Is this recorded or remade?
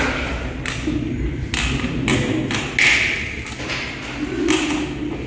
recorded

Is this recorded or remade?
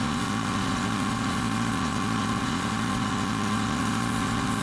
remade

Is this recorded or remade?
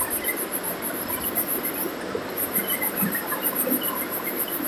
recorded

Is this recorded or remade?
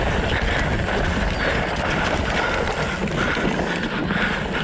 recorded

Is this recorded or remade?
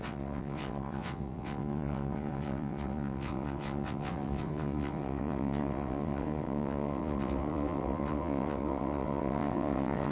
remade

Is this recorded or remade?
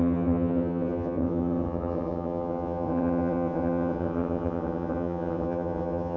remade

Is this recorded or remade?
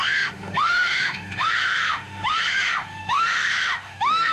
remade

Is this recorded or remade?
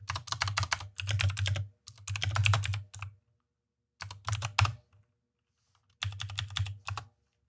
recorded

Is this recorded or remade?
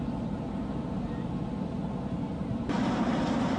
recorded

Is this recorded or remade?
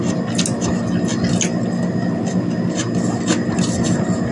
recorded